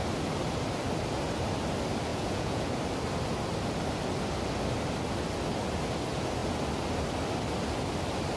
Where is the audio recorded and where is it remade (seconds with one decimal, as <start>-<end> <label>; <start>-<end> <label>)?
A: 0.0-2.1 recorded; 2.1-2.7 remade; 2.7-8.4 recorded